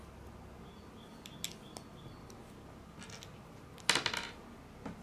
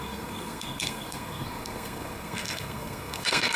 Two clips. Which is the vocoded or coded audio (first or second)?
second